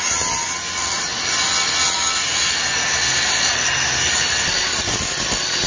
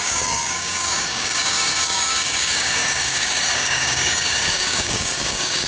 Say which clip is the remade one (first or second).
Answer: second